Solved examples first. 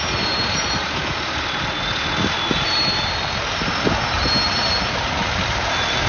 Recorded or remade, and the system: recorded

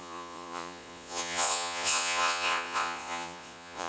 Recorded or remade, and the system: remade, vocoder, Vocos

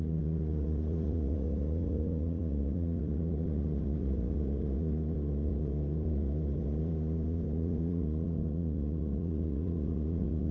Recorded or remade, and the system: remade, vocoder, Vocos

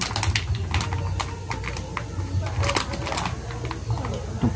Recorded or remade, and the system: recorded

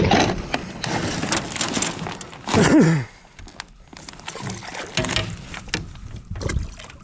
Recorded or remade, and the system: recorded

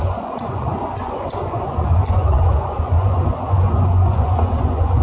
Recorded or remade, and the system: remade, vocoder, Vocos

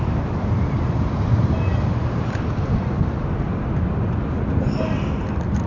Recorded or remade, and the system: recorded